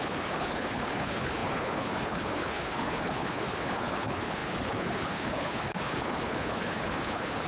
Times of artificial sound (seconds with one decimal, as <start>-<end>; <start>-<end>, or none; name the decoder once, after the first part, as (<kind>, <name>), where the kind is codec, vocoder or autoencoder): 0.0-7.5 (codec, HILCodec)